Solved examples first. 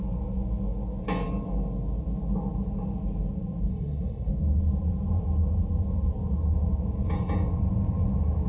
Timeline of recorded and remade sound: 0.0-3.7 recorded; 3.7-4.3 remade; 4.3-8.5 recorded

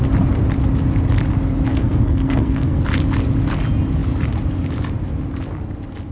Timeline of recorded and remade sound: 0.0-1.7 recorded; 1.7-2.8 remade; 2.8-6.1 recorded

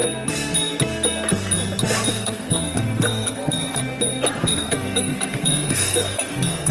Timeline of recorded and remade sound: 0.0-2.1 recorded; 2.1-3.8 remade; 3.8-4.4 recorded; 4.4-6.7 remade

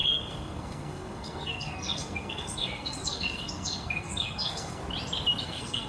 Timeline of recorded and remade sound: 0.0-4.8 remade; 4.8-5.4 recorded; 5.4-5.9 remade

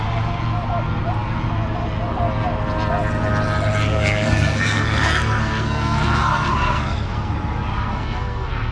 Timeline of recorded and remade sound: 0.0-3.9 recorded; 3.9-7.3 remade; 7.3-7.7 recorded; 7.7-8.7 remade

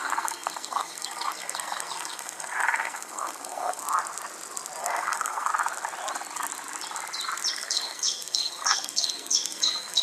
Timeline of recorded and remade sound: 0.0-3.8 remade; 3.8-4.8 recorded; 4.8-5.5 remade; 5.5-7.5 recorded; 7.5-10.0 remade